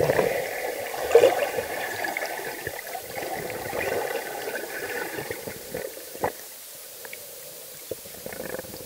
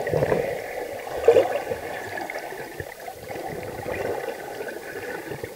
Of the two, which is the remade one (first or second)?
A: first